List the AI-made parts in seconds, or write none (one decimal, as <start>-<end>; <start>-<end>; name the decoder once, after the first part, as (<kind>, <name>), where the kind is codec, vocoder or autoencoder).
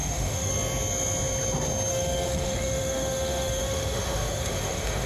0.0-0.5 (autoencoder, DAC-VAE); 1.9-5.1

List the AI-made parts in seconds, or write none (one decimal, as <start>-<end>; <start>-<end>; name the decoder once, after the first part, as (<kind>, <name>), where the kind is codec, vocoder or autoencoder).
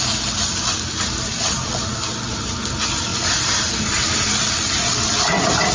none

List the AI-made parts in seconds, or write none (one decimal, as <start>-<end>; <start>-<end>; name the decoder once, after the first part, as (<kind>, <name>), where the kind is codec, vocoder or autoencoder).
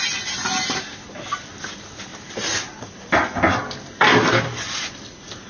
none